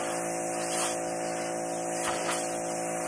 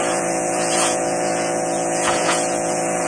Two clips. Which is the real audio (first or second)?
first